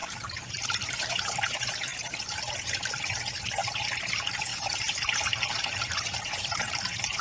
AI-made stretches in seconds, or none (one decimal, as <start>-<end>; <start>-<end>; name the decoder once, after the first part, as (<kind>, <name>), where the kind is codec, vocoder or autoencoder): 0.0-3.6 (vocoder, BigVGAN v2); 4.1-7.2